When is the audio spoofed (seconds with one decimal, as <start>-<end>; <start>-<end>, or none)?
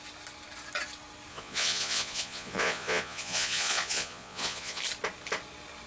1.3-4.8